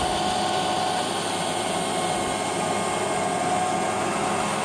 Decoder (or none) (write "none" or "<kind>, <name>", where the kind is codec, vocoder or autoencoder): none